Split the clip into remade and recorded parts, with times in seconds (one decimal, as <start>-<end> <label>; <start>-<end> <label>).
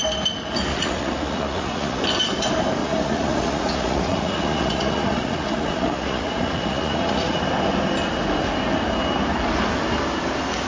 0.0-0.7 recorded; 0.7-2.0 remade; 2.0-2.8 recorded; 2.8-7.4 remade; 7.4-10.7 recorded